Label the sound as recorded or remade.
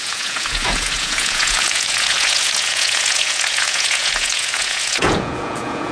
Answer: remade